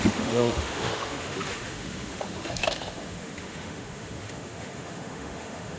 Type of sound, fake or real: fake